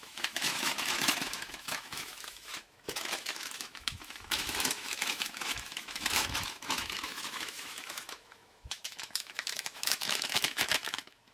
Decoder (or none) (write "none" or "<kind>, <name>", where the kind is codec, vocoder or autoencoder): autoencoder, DAC-VAE